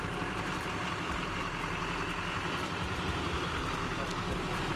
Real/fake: fake